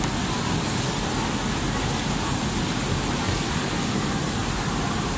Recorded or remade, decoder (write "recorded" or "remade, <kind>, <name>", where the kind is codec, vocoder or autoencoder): recorded